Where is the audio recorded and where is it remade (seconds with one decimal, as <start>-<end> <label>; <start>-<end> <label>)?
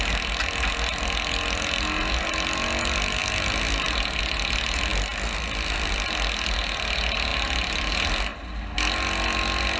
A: 0.0-9.8 recorded